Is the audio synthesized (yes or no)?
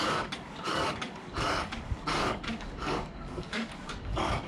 yes